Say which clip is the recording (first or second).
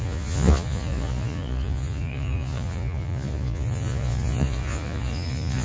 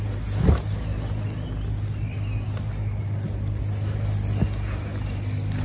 second